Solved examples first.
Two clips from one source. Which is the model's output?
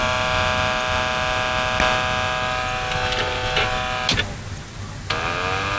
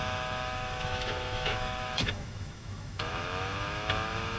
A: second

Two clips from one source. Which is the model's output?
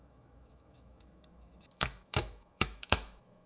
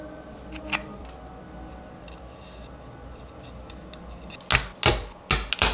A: first